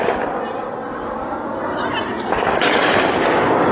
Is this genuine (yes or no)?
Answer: yes